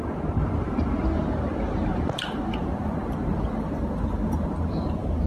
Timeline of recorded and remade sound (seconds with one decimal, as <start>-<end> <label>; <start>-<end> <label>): 0.0-1.9 recorded; 1.9-5.3 remade